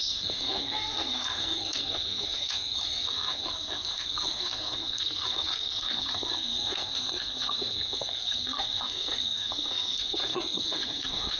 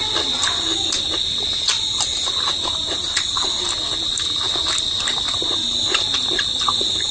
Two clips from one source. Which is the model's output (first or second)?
first